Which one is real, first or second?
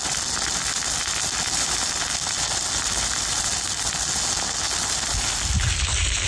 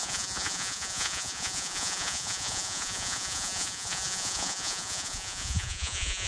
first